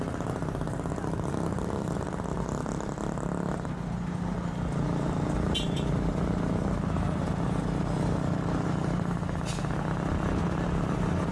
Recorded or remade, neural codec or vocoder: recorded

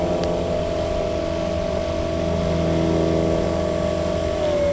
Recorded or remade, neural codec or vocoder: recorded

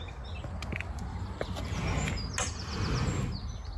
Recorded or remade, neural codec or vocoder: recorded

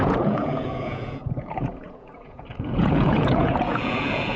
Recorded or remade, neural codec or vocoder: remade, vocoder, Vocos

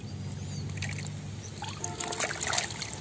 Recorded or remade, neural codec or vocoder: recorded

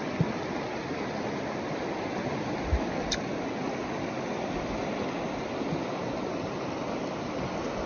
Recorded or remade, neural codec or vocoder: recorded